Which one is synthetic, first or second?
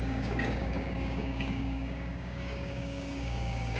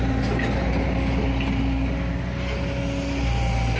first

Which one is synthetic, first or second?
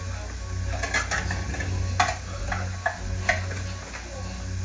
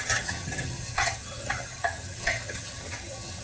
second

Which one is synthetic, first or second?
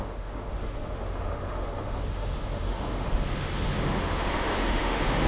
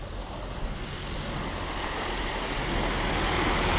first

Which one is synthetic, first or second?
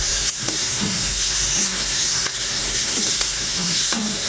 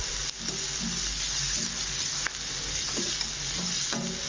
first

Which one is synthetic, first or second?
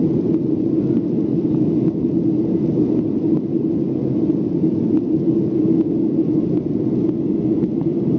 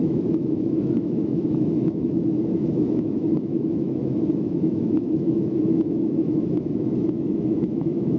second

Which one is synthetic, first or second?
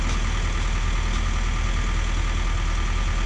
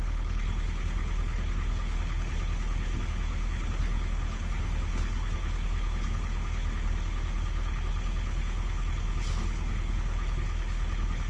second